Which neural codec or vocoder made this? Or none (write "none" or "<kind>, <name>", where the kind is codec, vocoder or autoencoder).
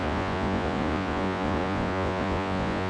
vocoder, Vocos